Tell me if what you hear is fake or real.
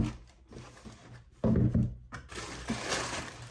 real